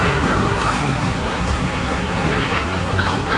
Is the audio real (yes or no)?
no